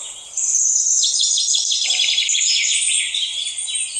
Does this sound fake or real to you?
fake